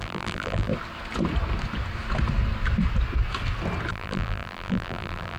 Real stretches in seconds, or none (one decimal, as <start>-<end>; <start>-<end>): 0.7-3.9

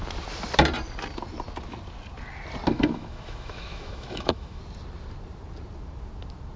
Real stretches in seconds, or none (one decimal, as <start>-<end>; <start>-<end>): 0.0-2.7; 4.6-6.6

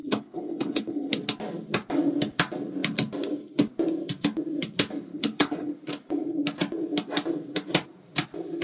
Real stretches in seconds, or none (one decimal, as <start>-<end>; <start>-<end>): 1.1-5.1; 5.7-8.6

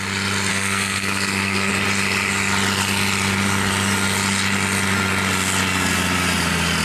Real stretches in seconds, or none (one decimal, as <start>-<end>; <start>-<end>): 0.0-0.5; 1.7-6.8

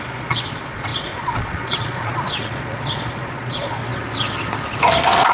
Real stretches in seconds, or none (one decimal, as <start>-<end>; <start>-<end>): 3.8-5.3